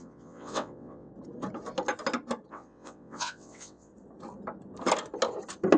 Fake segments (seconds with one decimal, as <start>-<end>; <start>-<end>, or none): 0.0-1.1; 2.5-3.9